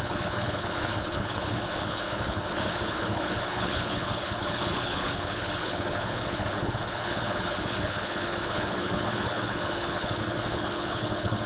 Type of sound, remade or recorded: remade